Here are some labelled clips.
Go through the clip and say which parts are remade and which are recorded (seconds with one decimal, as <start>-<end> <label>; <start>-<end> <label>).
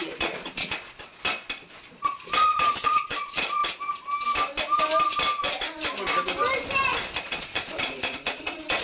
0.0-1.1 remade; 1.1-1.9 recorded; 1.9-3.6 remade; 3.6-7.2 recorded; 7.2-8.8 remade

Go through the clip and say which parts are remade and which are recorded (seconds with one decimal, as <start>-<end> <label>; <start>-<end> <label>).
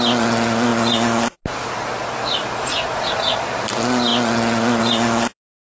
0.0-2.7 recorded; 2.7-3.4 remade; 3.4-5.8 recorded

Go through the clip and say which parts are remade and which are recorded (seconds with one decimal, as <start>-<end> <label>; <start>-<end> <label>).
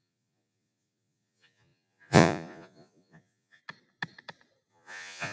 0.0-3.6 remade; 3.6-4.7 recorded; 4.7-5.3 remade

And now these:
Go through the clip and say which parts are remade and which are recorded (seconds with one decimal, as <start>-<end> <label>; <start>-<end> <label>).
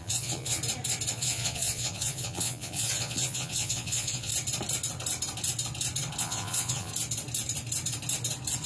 0.0-0.6 remade; 0.6-1.1 recorded; 1.1-4.3 remade; 4.3-6.2 recorded; 6.2-6.9 remade; 6.9-8.7 recorded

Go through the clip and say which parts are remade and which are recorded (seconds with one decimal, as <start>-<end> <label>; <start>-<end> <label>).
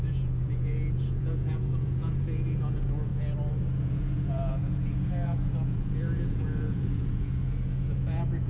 0.0-3.1 remade; 3.1-3.8 recorded; 3.8-8.5 remade